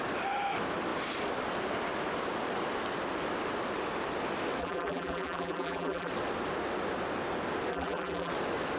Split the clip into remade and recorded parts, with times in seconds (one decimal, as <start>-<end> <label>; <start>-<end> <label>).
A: 0.0-4.6 recorded; 4.6-6.1 remade; 6.1-7.7 recorded; 7.7-8.3 remade; 8.3-8.8 recorded